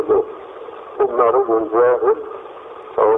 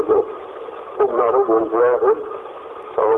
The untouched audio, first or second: first